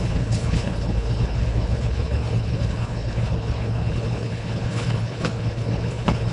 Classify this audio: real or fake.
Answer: fake